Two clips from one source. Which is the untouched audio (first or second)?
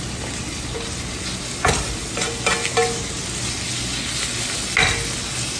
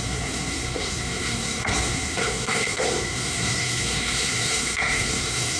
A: first